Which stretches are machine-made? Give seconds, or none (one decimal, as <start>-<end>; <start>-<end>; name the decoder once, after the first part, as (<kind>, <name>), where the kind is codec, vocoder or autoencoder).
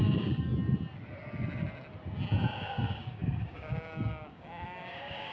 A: 0.0-0.5 (codec, DAC); 2.5-5.3